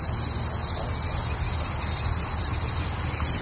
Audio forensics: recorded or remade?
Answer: recorded